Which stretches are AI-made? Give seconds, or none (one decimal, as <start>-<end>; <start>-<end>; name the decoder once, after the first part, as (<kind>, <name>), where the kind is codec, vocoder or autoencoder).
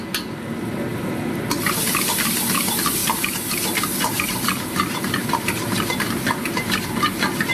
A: 0.9-1.4 (vocoder, BigVGAN v2); 3.0-7.5